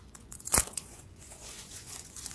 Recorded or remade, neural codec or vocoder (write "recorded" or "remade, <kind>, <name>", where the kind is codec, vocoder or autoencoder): remade, vocoder, Vocos